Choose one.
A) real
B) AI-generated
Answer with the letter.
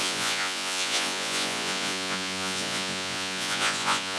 B